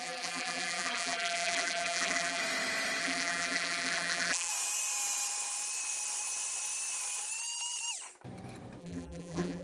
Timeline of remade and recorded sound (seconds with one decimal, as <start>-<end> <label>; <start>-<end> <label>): 0.0-2.4 remade; 2.4-3.0 recorded; 3.0-4.5 remade; 4.5-8.8 recorded; 8.8-9.6 remade

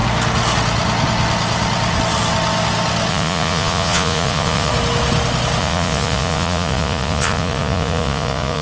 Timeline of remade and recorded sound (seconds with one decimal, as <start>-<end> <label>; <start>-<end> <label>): 0.0-3.1 recorded; 3.1-4.7 remade; 4.7-5.6 recorded; 5.6-8.6 remade

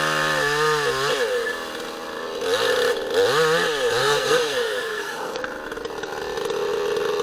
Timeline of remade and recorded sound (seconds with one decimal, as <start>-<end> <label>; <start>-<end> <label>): 0.0-4.0 recorded; 4.0-5.4 remade; 5.4-7.2 recorded

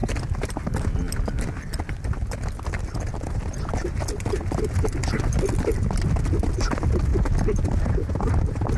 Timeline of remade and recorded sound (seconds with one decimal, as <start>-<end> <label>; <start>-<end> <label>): 0.0-8.8 remade

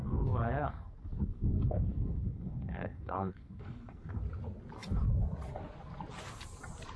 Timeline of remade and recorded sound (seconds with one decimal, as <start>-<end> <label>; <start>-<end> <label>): 0.0-4.2 remade; 4.2-7.0 recorded